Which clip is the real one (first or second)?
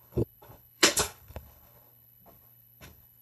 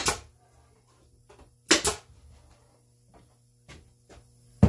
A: second